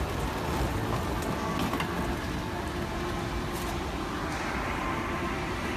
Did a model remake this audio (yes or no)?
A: no